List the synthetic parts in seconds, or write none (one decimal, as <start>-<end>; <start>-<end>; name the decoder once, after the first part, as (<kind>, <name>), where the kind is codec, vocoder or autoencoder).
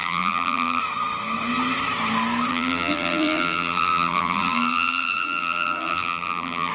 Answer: 0.0-0.8 (vocoder, BigVGAN v2); 2.5-6.7